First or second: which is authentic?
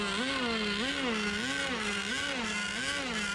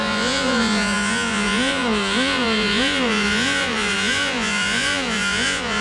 first